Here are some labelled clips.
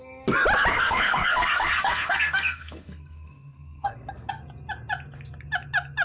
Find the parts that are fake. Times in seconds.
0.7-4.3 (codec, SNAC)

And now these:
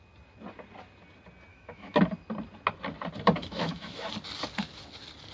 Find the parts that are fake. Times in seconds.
1.5-2.0 (autoencoder, DAC-VAE); 3.4-4.1

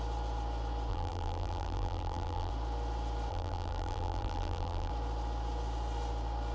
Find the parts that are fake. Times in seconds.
0.9-2.5 (vocoder, BigVGAN v2); 3.3-4.9

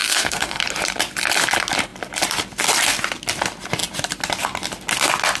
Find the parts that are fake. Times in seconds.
0.0-0.6 (codec, SNAC)

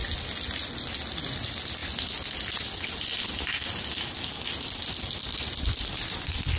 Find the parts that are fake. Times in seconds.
none

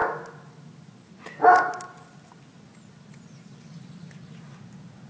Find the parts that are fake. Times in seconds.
none

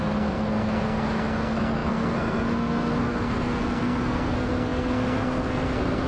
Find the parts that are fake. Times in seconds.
0.0-6.1 (codec, SNAC)

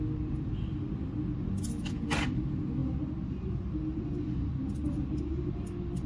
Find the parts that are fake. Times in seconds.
none